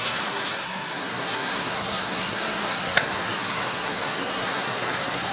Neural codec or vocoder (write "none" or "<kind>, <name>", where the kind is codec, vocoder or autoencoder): codec, SNAC